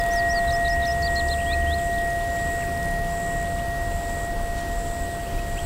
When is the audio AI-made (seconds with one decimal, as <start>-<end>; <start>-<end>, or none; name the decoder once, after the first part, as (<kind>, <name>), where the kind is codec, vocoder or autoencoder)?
none